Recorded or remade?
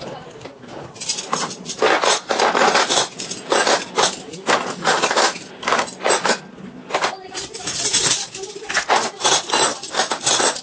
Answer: recorded